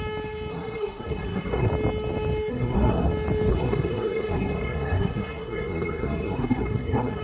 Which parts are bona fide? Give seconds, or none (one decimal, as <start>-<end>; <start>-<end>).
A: 0.0-0.5; 1.7-2.5; 3.1-3.5